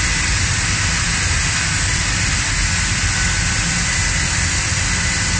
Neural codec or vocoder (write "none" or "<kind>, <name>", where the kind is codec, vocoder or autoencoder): none